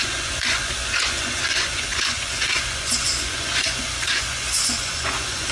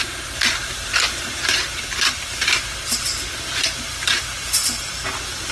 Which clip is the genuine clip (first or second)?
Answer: second